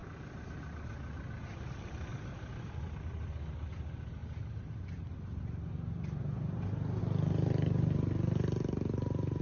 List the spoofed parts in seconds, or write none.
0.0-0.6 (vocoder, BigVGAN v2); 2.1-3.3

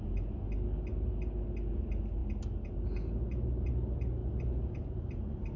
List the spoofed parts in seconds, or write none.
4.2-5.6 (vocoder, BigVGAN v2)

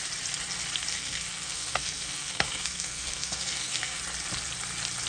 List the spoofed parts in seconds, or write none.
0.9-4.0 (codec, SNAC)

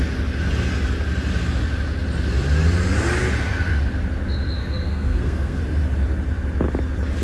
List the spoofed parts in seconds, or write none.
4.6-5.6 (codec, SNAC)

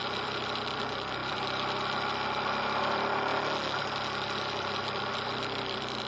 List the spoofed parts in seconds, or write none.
0.0-3.3 (vocoder, BigVGAN v2); 3.8-6.1

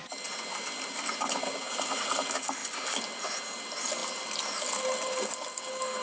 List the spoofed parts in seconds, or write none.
none

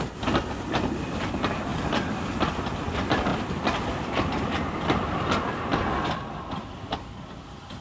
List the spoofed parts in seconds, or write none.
none